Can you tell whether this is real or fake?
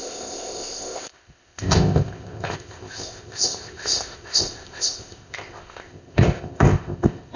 fake